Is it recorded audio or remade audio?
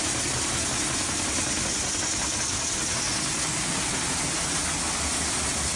recorded